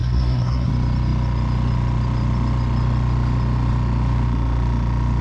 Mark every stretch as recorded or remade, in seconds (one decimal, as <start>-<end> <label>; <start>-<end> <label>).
0.0-0.7 remade; 0.7-5.2 recorded